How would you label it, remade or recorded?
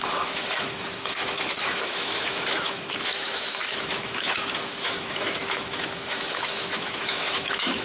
remade